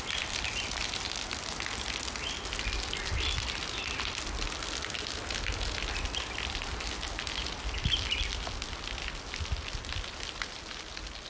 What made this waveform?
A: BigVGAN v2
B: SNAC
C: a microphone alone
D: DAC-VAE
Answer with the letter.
C